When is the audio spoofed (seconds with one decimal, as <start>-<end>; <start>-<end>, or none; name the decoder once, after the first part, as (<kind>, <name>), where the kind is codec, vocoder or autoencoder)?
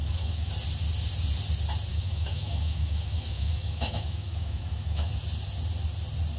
0.0-0.5 (autoencoder, DAC-VAE); 1.9-5.1